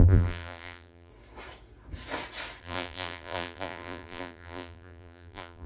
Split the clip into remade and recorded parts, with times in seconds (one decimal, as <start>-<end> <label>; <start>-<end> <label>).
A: 0.0-1.1 remade; 1.1-2.6 recorded; 2.6-5.7 remade